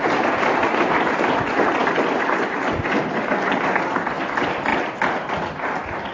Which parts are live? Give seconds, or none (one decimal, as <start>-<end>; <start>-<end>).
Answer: 0.0-1.8; 3.0-4.7; 5.3-6.1